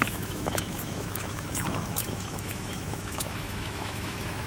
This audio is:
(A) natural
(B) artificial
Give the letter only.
B